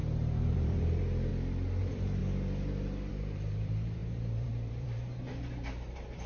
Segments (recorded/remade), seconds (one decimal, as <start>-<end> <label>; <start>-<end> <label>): 0.0-1.3 remade; 1.3-1.8 recorded; 1.8-2.2 remade; 2.2-3.1 recorded; 3.1-6.3 remade